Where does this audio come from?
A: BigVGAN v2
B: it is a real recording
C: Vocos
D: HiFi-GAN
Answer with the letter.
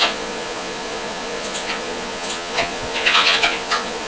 C